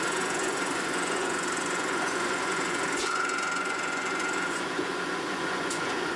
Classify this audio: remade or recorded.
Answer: remade